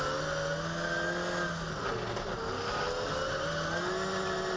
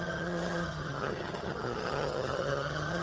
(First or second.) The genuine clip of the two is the first